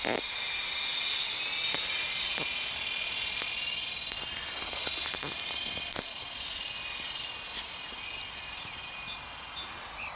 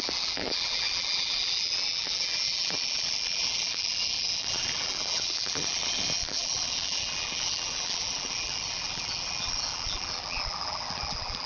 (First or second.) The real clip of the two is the first